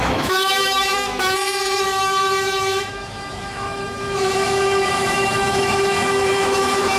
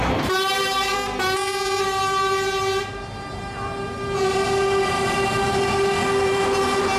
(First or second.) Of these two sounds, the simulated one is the first